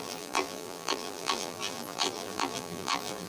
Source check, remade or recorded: remade